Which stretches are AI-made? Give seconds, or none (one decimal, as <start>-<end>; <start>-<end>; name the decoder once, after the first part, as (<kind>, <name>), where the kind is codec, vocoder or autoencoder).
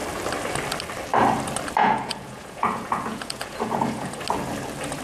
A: 1.8-4.2 (vocoder, Vocos)